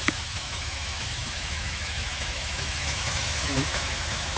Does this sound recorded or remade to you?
remade